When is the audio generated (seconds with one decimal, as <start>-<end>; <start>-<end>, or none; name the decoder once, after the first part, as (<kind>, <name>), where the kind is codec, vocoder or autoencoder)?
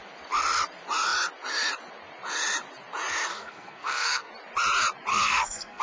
3.3-4.3 (codec, SNAC); 5.1-5.8